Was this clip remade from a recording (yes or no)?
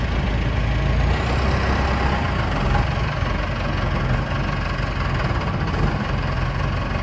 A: no